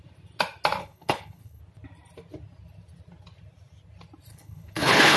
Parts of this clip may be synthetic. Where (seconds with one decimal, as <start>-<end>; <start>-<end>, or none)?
0.8-1.6; 4.3-5.2